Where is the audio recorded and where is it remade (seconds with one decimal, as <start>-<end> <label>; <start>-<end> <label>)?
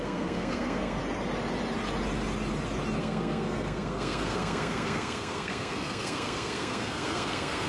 0.0-1.0 remade; 1.0-3.0 recorded; 3.0-7.7 remade